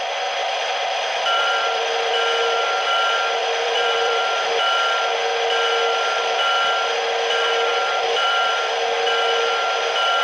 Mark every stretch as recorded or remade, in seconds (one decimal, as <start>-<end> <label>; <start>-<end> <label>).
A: 0.0-0.4 recorded; 0.4-2.1 remade; 2.1-3.4 recorded; 3.4-4.2 remade; 4.2-7.7 recorded; 7.7-8.7 remade; 8.7-10.2 recorded